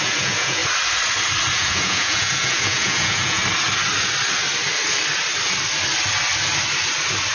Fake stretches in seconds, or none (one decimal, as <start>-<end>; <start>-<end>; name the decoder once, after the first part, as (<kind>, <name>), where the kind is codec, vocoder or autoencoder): 0.0-0.6 (vocoder, Vocos); 1.5-3.4